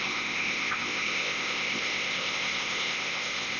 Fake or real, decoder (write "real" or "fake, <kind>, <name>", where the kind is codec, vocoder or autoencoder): fake, codec, ZipCodec